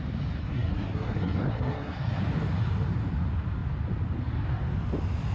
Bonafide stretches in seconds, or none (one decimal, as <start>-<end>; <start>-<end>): 0.0-0.4; 2.2-5.3